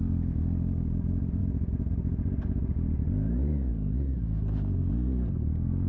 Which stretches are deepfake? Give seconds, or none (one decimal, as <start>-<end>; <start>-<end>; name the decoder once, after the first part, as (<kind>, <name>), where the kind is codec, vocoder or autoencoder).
none